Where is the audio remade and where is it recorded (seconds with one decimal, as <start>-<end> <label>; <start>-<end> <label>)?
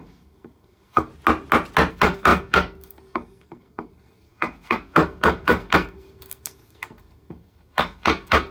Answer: 0.0-1.1 remade; 1.1-1.9 recorded; 1.9-8.5 remade